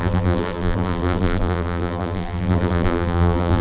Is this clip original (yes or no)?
no